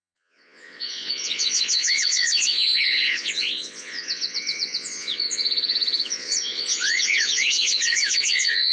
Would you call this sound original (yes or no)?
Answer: no